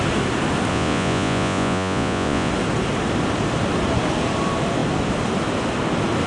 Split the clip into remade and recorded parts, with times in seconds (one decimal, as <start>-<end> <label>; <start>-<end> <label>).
0.0-0.7 recorded; 0.7-2.5 remade; 2.5-6.3 recorded

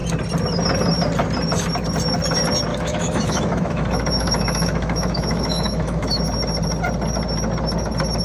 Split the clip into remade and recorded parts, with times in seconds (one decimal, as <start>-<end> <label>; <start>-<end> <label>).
0.0-2.7 recorded; 2.7-6.2 remade; 6.2-8.2 recorded